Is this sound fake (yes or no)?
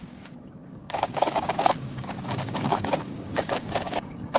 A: yes